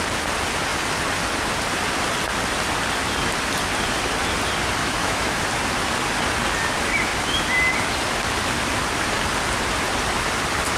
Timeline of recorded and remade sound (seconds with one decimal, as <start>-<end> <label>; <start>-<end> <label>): 0.0-4.8 recorded; 4.8-5.4 remade; 5.4-10.8 recorded